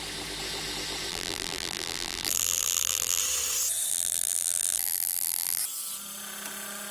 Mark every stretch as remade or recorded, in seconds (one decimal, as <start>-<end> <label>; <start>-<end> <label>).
0.0-1.1 recorded; 1.1-3.2 remade; 3.2-3.9 recorded; 3.9-5.6 remade; 5.6-6.9 recorded